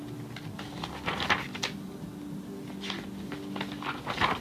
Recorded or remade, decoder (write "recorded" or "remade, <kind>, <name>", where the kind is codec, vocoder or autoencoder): recorded